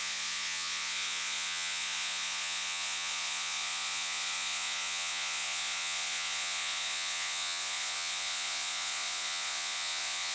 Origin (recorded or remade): remade